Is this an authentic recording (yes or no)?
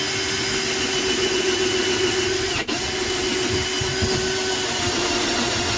yes